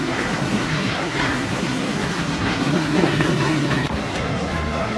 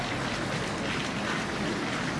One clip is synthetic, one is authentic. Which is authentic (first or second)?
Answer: second